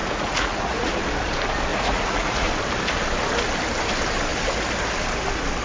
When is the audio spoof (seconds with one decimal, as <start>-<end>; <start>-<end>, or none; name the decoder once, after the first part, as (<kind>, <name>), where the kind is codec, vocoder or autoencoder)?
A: 0.0-0.9 (vocoder, Vocos); 1.7-2.5